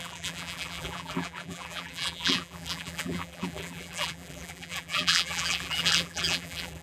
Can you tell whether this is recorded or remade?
remade